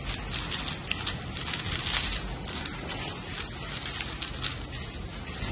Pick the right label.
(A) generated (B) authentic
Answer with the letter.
B